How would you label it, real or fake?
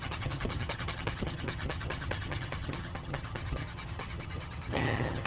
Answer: fake